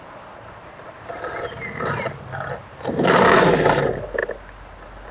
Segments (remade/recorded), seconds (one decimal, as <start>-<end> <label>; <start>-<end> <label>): 0.0-5.1 recorded